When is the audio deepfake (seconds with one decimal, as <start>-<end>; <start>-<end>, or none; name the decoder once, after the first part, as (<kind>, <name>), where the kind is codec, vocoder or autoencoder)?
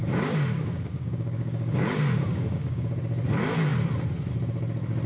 0.0-3.0 (codec, DAC)